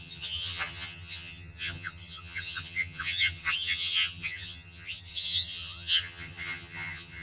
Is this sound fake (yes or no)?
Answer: yes